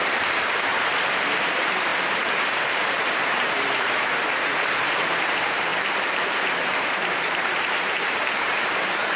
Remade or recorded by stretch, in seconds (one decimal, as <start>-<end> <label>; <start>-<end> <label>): 0.0-0.7 remade; 0.7-1.5 recorded; 1.5-5.7 remade; 5.7-6.6 recorded; 6.6-9.2 remade